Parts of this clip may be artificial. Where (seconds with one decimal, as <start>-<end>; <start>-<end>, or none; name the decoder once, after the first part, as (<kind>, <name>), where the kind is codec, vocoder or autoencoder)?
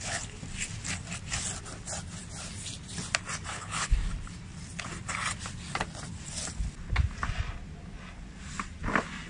0.0-0.4 (codec, HILCodec); 3.5-4.0